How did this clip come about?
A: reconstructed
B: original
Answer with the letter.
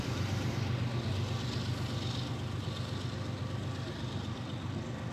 B